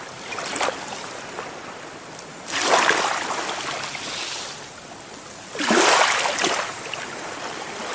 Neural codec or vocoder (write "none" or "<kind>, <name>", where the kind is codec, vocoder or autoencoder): none